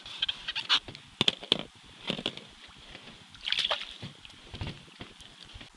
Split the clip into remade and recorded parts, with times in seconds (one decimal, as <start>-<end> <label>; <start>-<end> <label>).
0.0-5.8 recorded